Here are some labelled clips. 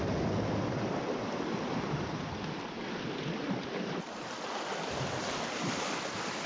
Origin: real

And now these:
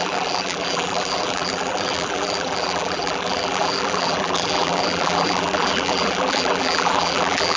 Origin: fake